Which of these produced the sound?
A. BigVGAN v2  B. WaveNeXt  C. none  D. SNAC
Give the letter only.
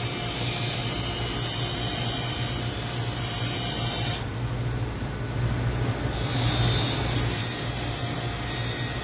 C